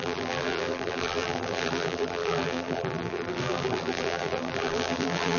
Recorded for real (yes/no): no